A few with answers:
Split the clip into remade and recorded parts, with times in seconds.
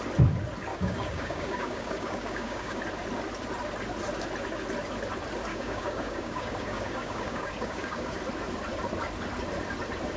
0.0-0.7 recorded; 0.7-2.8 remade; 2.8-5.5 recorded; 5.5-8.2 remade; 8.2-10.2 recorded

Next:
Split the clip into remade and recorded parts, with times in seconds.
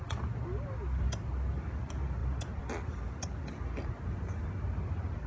0.0-5.3 recorded